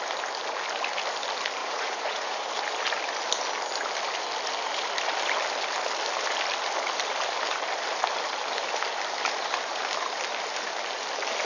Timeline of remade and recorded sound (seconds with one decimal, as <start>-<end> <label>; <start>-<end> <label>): 0.0-1.6 recorded; 1.6-2.5 remade; 2.5-11.4 recorded